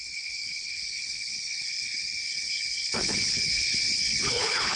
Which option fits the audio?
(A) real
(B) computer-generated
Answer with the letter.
B